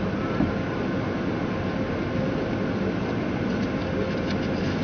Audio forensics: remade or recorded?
recorded